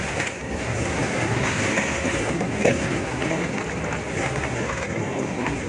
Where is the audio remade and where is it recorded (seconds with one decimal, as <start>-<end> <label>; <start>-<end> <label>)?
0.0-3.6 remade; 3.6-4.1 recorded; 4.1-5.7 remade